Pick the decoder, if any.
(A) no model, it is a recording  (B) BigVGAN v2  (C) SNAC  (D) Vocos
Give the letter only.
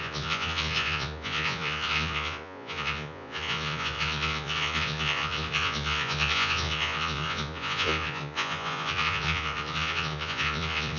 D